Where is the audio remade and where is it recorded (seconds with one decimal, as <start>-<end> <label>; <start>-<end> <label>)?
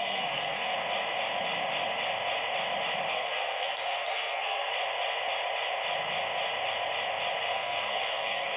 0.0-0.7 remade; 0.7-3.1 recorded; 3.1-4.7 remade; 4.7-7.4 recorded; 7.4-8.6 remade